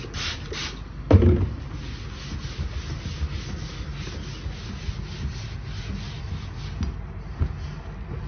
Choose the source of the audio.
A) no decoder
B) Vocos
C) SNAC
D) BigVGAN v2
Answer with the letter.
A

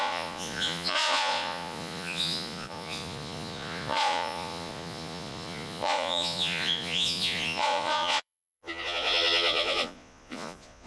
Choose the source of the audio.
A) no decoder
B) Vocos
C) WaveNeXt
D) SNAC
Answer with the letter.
B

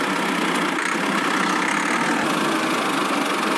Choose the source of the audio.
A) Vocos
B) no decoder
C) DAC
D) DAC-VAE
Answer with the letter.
B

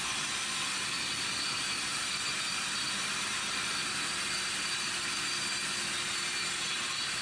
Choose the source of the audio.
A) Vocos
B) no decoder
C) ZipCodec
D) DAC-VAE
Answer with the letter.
B